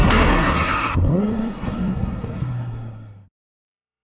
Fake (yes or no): yes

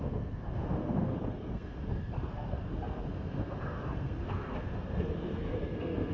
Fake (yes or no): yes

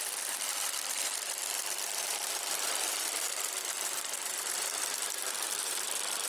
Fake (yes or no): no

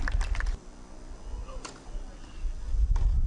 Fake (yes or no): no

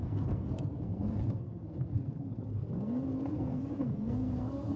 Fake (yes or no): yes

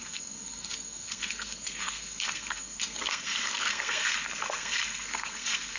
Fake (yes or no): yes